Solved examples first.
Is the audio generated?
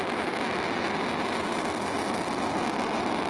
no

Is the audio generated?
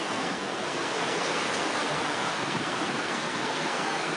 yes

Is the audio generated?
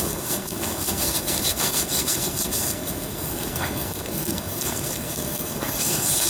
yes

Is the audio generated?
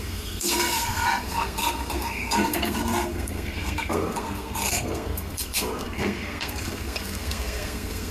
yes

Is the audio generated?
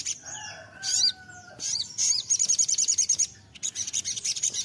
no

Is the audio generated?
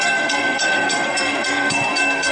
yes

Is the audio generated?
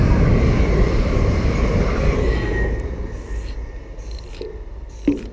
no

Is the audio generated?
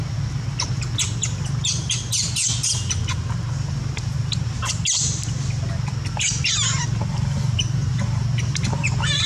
no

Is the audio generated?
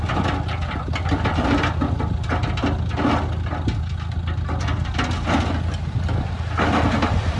no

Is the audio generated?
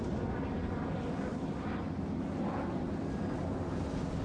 no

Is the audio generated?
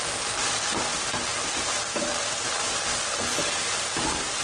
no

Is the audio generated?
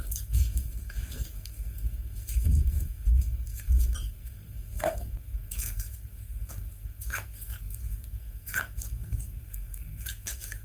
yes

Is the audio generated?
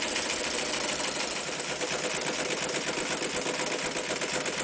no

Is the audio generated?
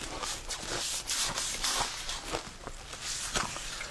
no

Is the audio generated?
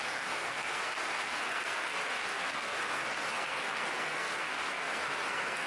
yes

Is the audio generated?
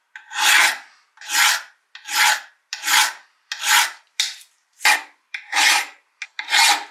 no